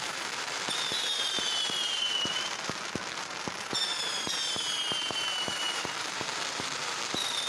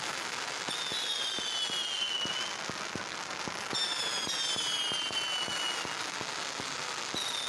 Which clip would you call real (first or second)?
second